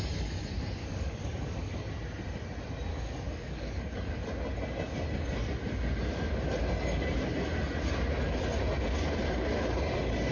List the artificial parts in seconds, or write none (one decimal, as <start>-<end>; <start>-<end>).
0.8-1.9; 2.9-4.1